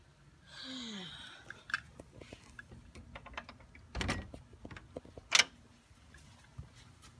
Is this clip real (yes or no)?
yes